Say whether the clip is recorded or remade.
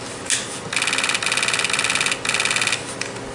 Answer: recorded